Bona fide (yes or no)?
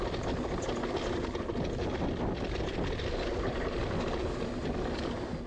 yes